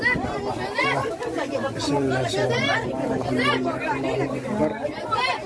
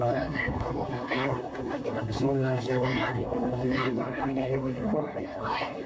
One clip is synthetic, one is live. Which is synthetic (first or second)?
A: second